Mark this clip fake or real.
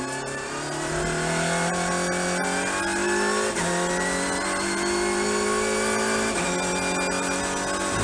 real